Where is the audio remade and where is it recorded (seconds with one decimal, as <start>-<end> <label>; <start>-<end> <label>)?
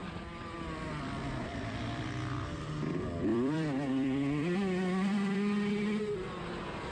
0.0-1.5 recorded; 1.5-2.0 remade; 2.0-3.3 recorded; 3.3-5.7 remade; 5.7-6.9 recorded